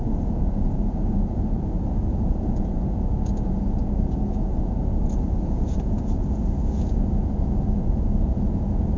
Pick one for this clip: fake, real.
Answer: fake